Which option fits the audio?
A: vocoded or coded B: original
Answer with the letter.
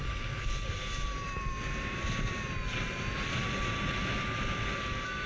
B